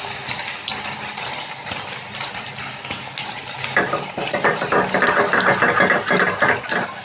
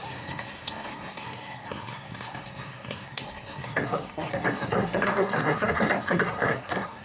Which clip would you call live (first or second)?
first